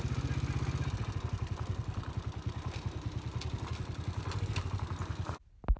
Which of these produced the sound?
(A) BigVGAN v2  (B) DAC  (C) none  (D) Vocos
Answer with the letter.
C